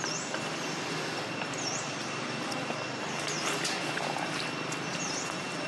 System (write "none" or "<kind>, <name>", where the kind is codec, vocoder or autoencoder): none